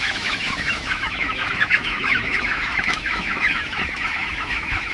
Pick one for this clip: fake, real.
fake